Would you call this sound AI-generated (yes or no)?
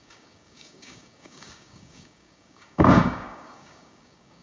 yes